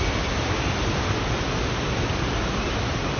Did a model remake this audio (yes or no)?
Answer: no